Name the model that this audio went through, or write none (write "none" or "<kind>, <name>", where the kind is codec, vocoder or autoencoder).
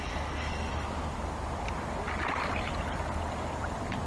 none